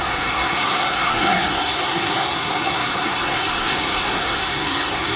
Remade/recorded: remade